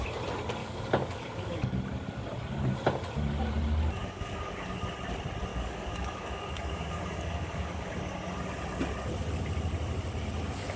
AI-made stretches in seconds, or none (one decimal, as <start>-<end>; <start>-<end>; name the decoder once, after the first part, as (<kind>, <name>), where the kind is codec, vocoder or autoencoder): 0.6-1.8 (codec, DAC); 4.0-4.8; 5.5-7.9